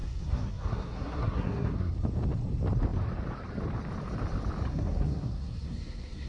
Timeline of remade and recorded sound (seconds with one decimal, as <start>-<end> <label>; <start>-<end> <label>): 0.0-1.9 remade; 1.9-4.7 recorded; 4.7-6.3 remade